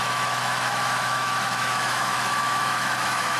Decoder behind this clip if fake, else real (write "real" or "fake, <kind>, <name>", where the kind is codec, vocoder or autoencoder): fake, autoencoder, DAC-VAE